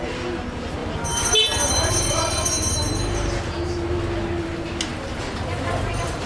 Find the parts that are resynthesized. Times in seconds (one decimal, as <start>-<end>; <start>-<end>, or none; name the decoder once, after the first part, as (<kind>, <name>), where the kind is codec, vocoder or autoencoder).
4.9-6.3 (vocoder, BigVGAN v2)